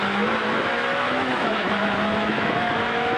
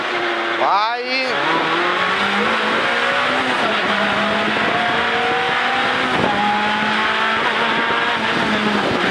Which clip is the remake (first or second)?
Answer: first